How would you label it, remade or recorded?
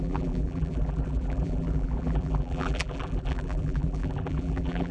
remade